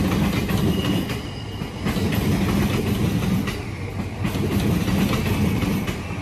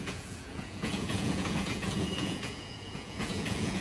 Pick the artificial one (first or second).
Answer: second